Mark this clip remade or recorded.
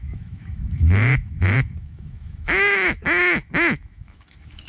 remade